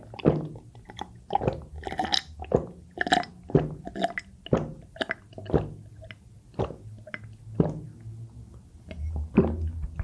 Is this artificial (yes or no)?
no